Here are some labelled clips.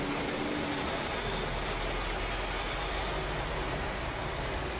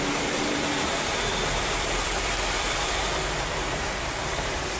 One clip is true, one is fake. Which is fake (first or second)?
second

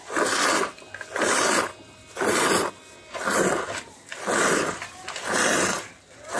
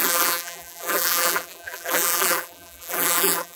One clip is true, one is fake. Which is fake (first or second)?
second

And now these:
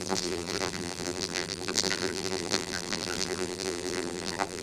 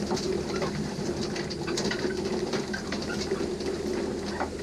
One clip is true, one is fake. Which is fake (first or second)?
first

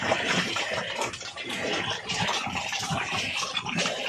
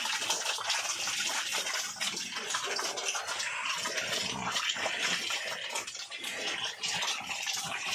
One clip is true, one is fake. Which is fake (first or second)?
first